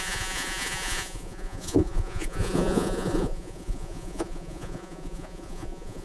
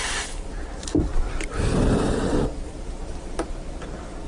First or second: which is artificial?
first